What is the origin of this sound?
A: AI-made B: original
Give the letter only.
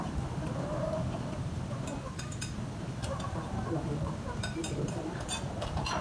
A